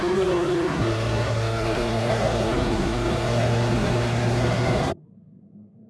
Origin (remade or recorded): remade